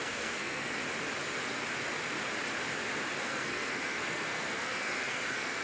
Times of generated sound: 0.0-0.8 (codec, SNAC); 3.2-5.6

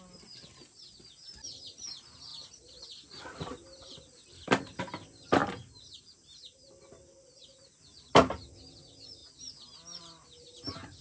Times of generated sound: 2.3-4.8 (vocoder, BigVGAN v2)

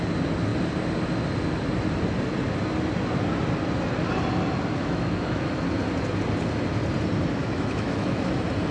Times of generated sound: 4.8-5.5 (autoencoder, DAC-VAE); 7.4-8.2